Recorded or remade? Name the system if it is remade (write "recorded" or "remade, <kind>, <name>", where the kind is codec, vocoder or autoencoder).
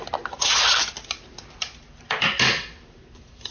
recorded